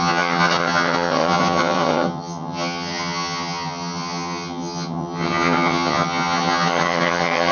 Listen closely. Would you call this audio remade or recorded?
remade